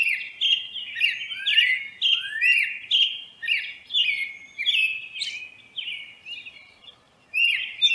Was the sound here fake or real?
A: real